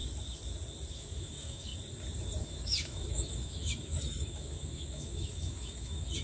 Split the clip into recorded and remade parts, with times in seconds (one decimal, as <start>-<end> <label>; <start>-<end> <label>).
0.0-0.9 recorded; 0.9-1.7 remade; 1.7-2.4 recorded; 2.4-6.2 remade